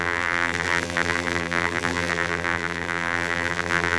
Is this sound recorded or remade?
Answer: remade